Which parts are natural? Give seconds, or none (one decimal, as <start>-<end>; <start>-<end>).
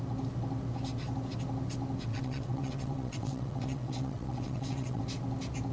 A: 0.0-2.1; 5.0-5.7